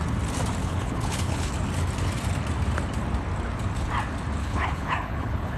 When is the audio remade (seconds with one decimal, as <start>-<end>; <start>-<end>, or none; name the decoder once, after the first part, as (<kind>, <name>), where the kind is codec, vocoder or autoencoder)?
0.6-1.5 (codec, HILCodec); 4.4-5.6